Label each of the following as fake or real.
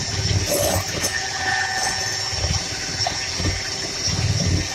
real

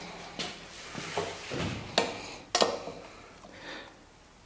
real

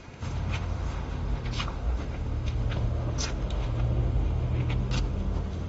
fake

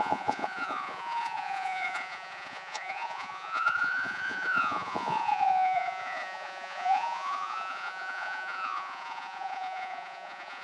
fake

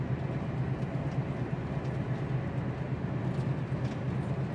real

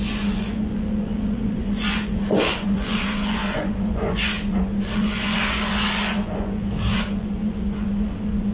fake